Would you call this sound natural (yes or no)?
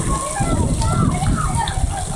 yes